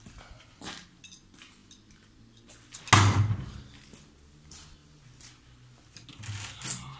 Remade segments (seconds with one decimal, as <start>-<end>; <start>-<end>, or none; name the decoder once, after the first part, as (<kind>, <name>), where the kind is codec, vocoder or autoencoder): none